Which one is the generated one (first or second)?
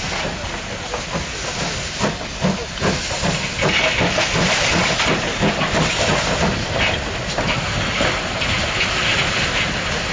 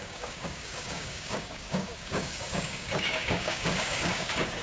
second